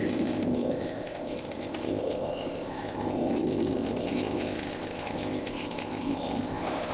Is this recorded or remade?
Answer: remade